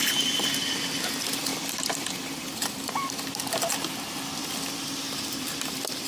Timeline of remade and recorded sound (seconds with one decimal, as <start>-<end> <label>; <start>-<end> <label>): 0.0-1.5 recorded; 1.5-3.2 remade; 3.2-4.4 recorded; 4.4-6.1 remade